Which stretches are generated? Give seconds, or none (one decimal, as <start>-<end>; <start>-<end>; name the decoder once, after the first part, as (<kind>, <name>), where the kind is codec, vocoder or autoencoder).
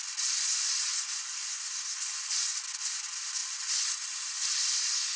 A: 1.5-2.0 (codec, SNAC)